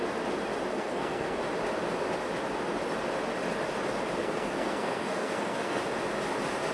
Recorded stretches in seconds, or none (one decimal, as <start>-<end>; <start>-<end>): 0.0-0.7; 1.4-4.2; 5.8-6.7